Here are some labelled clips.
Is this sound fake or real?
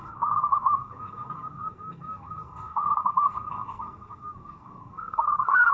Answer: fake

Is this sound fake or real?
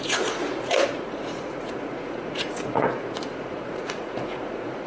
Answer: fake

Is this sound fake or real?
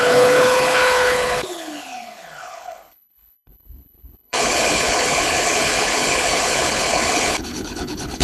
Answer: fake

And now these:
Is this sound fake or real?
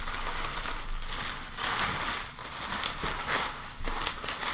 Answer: real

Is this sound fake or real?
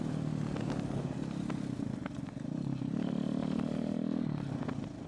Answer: real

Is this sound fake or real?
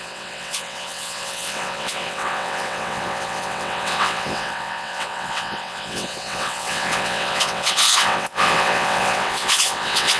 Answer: fake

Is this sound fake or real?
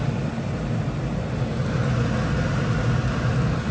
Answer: real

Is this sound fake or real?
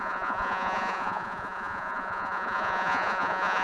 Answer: fake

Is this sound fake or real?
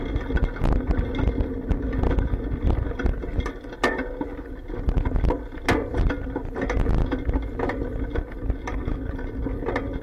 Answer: real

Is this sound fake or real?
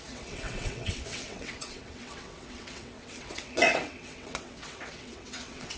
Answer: fake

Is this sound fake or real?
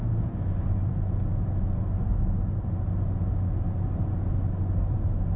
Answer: real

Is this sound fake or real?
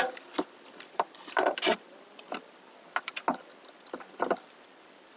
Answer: real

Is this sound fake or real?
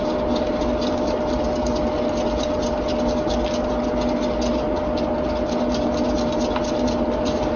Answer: real